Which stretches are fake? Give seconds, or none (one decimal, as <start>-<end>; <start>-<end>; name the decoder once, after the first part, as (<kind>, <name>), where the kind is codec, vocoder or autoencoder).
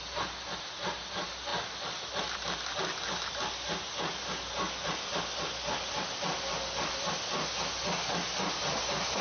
none